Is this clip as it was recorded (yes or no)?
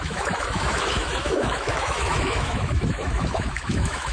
no